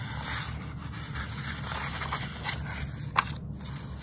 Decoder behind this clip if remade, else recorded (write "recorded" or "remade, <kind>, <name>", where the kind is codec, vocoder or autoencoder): recorded